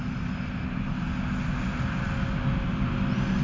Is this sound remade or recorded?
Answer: recorded